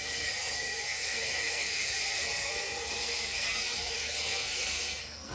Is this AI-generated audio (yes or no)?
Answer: yes